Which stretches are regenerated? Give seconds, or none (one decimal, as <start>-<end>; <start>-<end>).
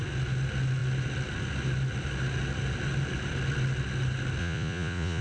4.4-5.2